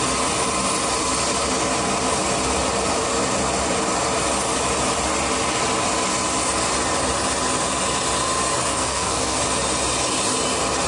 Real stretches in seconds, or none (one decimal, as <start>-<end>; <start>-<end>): 0.0-8.7; 9.4-10.9